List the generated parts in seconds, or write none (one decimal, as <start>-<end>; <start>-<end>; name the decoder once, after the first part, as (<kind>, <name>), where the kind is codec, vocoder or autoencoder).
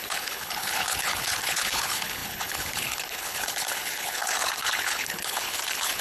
0.0-6.0 (codec, HILCodec)